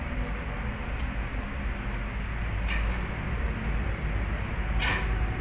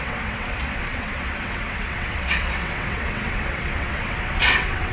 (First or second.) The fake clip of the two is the second